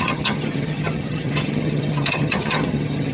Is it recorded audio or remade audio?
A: remade